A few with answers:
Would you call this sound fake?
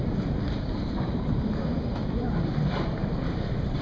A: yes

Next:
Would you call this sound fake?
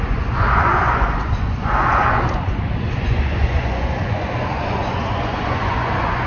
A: yes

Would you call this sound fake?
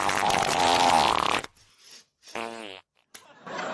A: no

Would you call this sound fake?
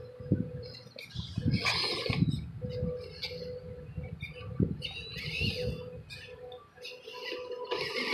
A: no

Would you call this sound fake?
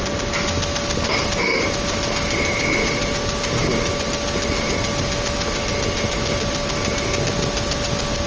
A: no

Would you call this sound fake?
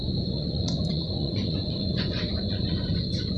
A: yes